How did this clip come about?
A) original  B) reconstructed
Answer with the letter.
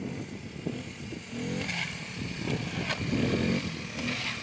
A